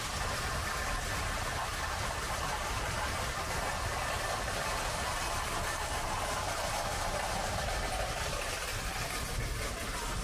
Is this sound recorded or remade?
recorded